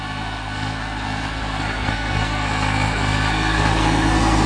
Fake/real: fake